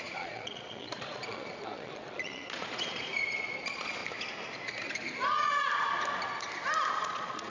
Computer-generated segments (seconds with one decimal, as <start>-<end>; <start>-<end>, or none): 0.0-3.1; 3.6-4.0; 6.9-7.5